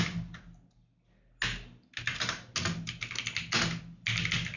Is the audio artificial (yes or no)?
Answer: no